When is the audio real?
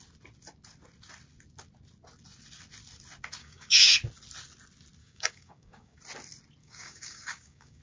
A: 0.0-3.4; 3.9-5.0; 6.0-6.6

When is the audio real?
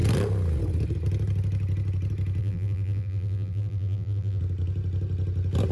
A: 0.0-2.4; 4.4-5.7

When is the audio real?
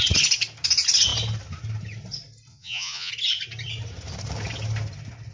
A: 0.0-2.5; 3.1-5.3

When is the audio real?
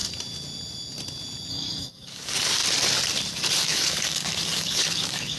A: 0.0-1.5; 2.6-3.6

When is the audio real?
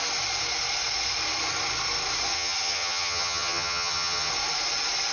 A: 0.0-2.3; 4.3-5.1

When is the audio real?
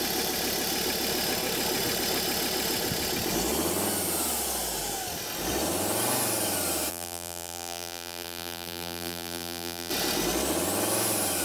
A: 0.0-6.9; 9.9-11.4